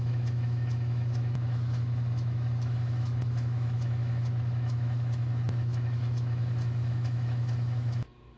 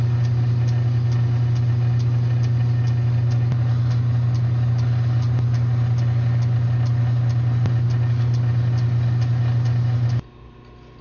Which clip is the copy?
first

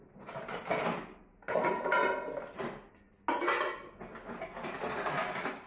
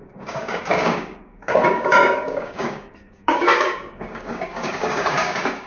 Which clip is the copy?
second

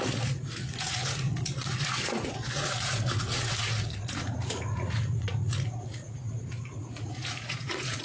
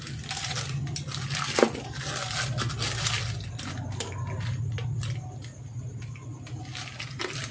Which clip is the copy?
first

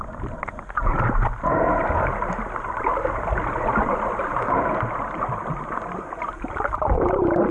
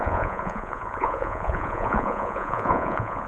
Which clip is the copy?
second